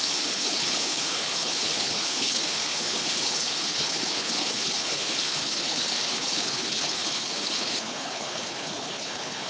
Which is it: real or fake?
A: fake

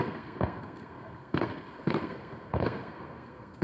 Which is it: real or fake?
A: fake